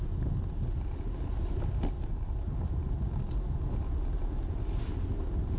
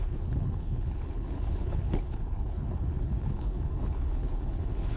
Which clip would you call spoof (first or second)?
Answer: second